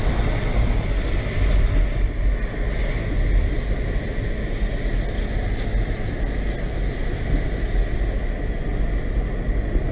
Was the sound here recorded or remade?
recorded